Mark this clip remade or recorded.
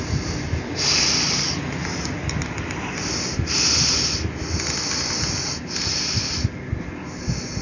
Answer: recorded